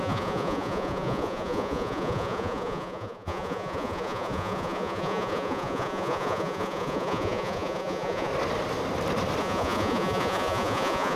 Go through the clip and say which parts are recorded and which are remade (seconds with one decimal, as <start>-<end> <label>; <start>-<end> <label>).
0.0-8.3 remade; 8.3-9.4 recorded; 9.4-11.2 remade